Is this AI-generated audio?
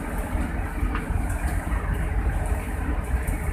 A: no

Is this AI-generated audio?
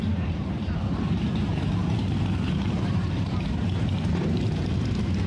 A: yes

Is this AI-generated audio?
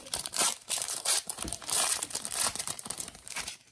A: yes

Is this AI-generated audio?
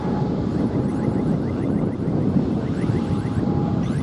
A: no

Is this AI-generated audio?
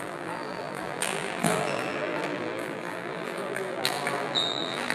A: yes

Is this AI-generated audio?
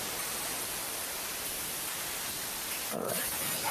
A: no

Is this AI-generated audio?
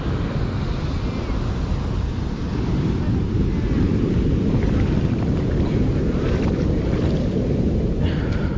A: no